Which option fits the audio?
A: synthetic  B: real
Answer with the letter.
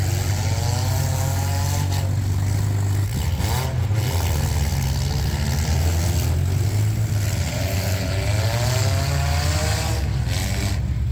B